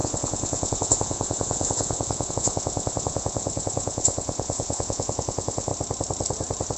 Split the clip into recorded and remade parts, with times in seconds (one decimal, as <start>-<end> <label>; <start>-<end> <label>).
0.0-5.7 remade; 5.7-6.8 recorded